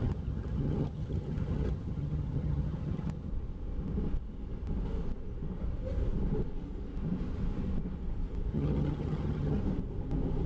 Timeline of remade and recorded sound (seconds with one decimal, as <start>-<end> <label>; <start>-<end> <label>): 0.0-3.3 remade; 3.3-8.5 recorded; 8.5-9.6 remade; 9.6-10.5 recorded